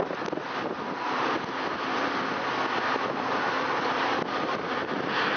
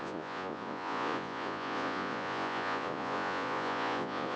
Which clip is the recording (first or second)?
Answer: first